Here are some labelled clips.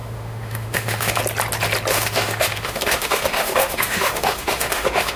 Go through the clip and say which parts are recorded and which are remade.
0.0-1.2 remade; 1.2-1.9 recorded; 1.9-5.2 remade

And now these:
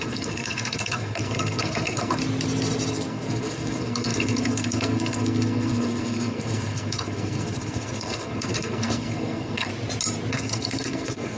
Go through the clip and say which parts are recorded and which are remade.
0.0-2.2 remade; 2.2-2.9 recorded; 2.9-9.7 remade; 9.7-10.3 recorded; 10.3-11.4 remade

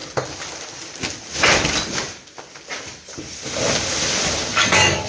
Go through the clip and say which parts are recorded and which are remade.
0.0-4.5 recorded; 4.5-5.1 remade